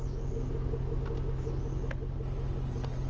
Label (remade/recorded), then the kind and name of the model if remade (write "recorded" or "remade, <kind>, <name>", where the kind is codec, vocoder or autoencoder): recorded